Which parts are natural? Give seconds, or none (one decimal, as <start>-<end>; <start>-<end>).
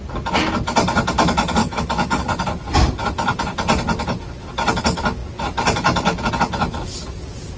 0.0-1.6; 2.2-7.6